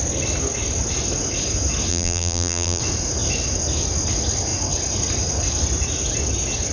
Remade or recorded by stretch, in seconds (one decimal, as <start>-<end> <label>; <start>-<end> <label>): 0.0-1.9 recorded; 1.9-2.8 remade; 2.8-6.7 recorded